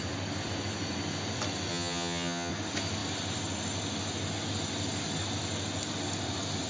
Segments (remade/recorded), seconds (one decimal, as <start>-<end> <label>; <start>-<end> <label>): 0.0-1.7 recorded; 1.7-2.5 remade; 2.5-6.7 recorded